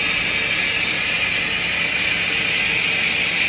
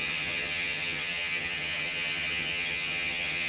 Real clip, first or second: first